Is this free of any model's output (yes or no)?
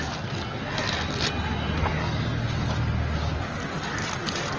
yes